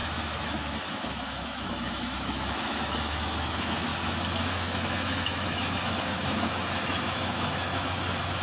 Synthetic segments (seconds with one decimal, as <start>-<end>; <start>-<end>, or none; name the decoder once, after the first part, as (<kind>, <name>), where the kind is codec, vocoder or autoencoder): 0.0-3.9 (autoencoder, DAC-VAE); 4.5-8.4